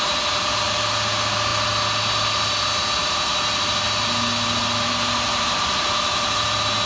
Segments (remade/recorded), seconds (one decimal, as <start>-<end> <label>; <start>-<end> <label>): 0.0-6.9 recorded